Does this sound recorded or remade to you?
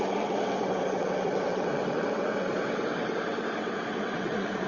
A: remade